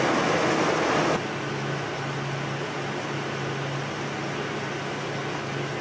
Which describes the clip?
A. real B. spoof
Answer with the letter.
A